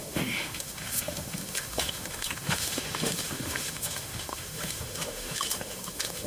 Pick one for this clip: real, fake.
fake